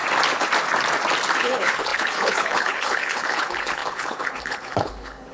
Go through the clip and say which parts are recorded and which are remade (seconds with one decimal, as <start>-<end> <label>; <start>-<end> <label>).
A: 0.0-1.4 recorded; 1.4-5.3 remade